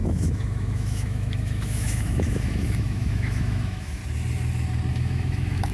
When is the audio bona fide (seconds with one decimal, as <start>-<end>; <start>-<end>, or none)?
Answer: 4.0-4.9